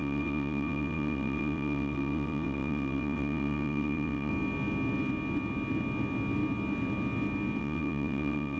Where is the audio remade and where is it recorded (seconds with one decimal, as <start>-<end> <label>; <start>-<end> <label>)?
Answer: 0.0-4.3 remade; 4.3-7.6 recorded; 7.6-8.6 remade